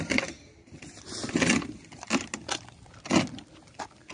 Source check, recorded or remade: recorded